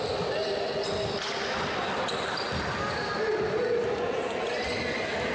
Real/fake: real